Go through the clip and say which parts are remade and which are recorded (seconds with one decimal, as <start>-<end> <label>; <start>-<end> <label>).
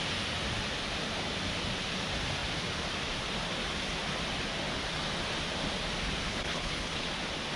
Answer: 0.0-6.3 recorded; 6.3-7.1 remade; 7.1-7.6 recorded